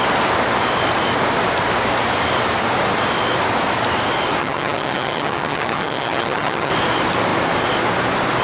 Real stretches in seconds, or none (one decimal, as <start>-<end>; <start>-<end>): 0.0-4.4; 6.7-8.4